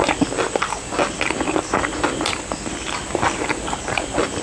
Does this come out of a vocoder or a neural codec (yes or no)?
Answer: no